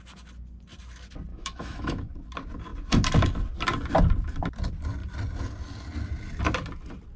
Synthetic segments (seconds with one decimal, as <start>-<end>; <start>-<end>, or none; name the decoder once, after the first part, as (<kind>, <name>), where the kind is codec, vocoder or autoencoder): 1.3-2.1 (autoencoder, DAC-VAE)